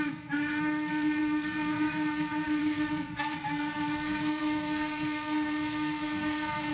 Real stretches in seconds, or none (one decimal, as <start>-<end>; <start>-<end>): none